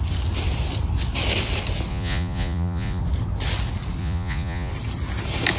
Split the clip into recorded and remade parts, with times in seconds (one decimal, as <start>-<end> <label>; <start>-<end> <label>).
0.0-1.9 recorded; 1.9-3.0 remade; 3.0-4.0 recorded; 4.0-4.7 remade; 4.7-5.6 recorded